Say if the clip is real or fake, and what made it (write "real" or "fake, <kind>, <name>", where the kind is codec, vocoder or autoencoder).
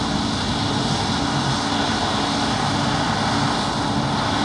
real